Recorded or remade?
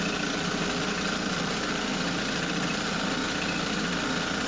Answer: recorded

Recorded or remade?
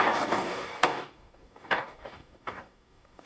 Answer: remade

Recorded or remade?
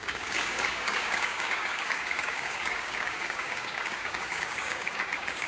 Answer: remade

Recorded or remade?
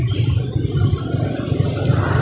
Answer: recorded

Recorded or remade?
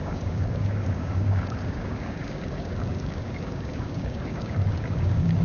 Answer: remade